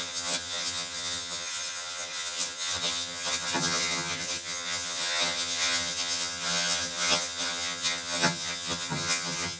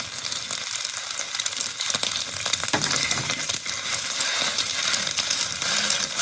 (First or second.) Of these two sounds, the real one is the second